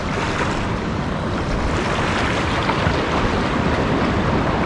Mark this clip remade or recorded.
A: recorded